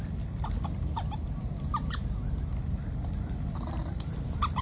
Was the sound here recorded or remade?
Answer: recorded